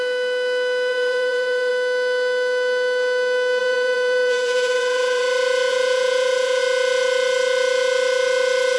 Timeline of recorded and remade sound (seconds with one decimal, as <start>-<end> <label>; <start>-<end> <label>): 0.0-0.9 recorded; 0.9-1.7 remade; 1.7-3.6 recorded; 3.6-5.2 remade; 5.2-5.7 recorded; 5.7-6.6 remade; 6.6-8.8 recorded